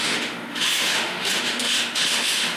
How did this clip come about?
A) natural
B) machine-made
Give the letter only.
B